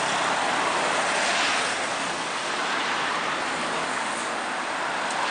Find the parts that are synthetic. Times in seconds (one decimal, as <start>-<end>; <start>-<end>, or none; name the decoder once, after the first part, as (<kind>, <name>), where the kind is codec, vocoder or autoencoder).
1.9-2.5 (codec, DAC); 3.6-4.3